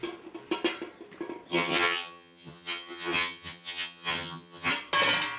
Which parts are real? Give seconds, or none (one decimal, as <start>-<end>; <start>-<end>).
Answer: 0.0-1.5; 4.7-5.4